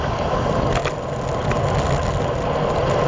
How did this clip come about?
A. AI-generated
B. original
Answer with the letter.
B